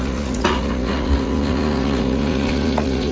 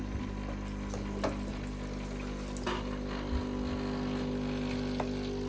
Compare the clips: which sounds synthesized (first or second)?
first